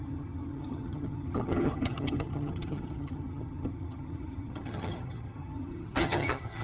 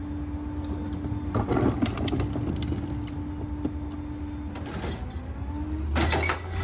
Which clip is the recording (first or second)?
second